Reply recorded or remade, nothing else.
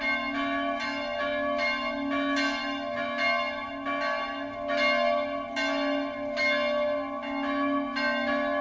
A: recorded